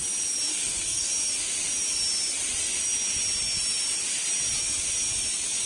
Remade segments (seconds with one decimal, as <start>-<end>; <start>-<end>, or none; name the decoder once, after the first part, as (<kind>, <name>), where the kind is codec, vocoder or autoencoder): 0.5-1.1 (codec, SNAC)